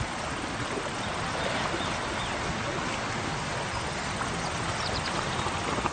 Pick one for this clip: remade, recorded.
recorded